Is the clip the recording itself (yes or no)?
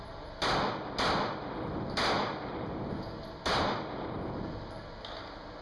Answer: yes